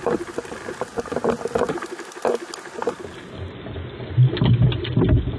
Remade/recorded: recorded